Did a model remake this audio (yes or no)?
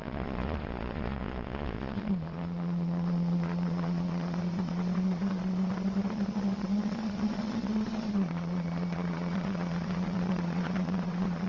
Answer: yes